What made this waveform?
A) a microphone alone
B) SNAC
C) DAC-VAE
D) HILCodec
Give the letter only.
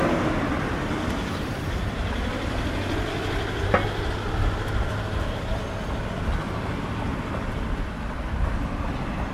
A